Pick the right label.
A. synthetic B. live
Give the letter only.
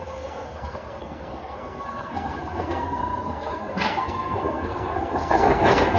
A